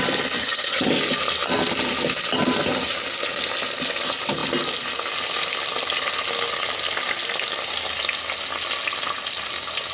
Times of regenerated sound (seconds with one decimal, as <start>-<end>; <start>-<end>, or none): 0.4-0.9